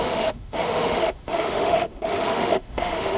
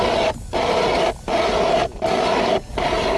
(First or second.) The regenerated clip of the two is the first